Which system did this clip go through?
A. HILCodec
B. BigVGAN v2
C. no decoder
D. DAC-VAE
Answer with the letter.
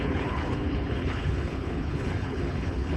A